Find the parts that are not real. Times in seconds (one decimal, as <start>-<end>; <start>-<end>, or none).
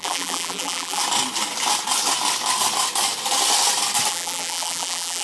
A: 0.0-1.0; 4.1-5.2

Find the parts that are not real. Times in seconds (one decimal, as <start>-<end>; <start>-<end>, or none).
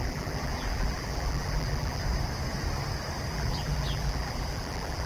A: 0.0-2.0; 3.3-5.1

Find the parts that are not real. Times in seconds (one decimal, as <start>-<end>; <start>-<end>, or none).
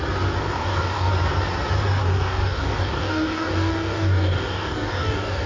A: 0.4-1.1; 2.0-5.5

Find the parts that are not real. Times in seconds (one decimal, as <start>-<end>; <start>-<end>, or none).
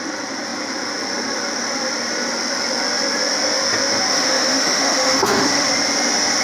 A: 4.1-5.7